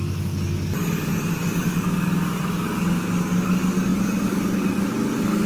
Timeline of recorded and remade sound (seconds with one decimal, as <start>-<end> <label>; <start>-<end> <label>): 0.0-5.5 remade